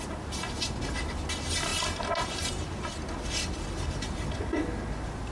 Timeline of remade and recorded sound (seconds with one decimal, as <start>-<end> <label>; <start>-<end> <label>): 0.0-5.3 recorded